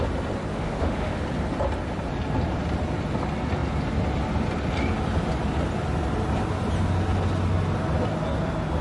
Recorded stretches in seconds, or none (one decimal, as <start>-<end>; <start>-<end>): 0.0-0.5; 1.2-8.8